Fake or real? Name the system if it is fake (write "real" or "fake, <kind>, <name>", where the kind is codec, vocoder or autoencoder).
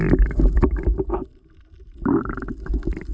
real